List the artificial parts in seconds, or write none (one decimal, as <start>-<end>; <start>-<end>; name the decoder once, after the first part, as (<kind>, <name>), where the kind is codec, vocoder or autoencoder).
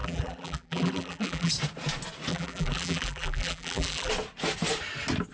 0.0-1.5 (vocoder, BigVGAN v2); 2.3-4.1